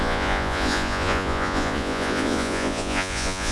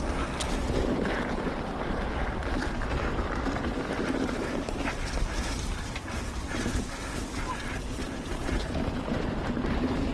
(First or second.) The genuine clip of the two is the second